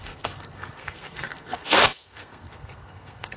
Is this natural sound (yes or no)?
no